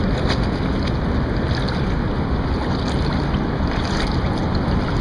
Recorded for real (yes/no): yes